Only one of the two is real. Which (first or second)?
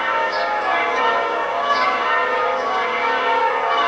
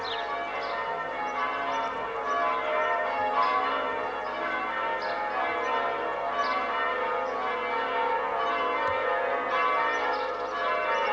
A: second